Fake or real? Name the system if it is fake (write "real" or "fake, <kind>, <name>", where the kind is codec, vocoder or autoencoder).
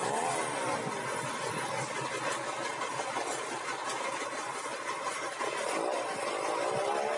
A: real